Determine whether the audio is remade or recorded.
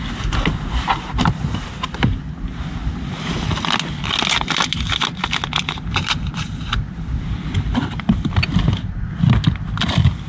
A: recorded